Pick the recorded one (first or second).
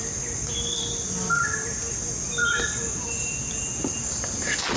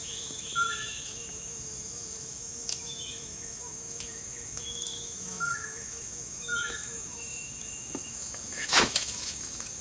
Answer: first